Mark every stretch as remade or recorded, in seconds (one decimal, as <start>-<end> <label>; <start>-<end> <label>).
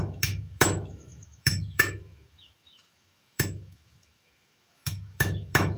0.0-5.8 remade